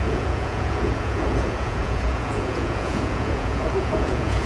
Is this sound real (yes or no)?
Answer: no